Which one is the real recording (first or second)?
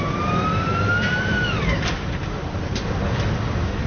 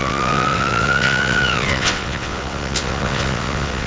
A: first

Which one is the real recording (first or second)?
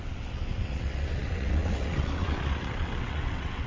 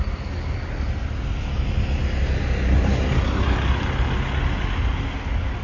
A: second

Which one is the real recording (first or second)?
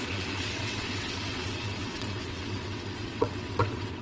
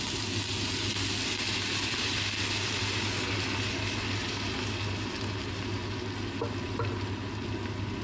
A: second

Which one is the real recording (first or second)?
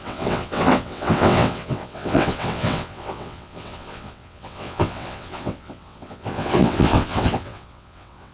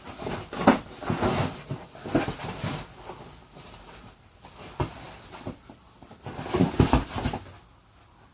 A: second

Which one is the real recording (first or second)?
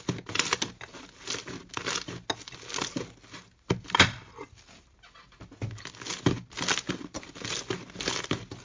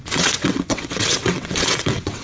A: first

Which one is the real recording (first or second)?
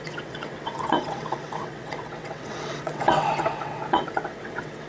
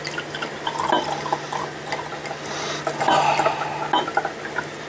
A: second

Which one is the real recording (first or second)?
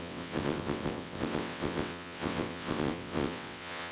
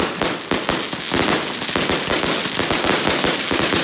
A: second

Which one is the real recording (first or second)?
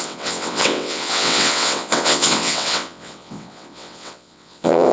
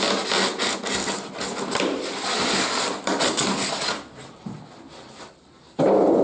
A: second